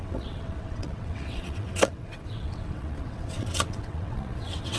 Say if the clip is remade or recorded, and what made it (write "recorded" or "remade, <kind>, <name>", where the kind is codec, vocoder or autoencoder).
remade, vocoder, WaveNeXt